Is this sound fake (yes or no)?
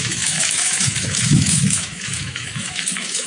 yes